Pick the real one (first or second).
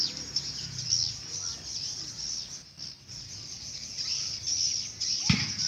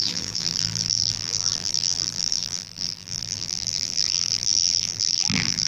first